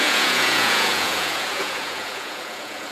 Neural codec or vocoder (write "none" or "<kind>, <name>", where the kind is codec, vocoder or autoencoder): vocoder, Vocos